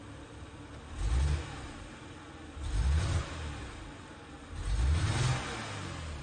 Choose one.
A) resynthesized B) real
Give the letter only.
B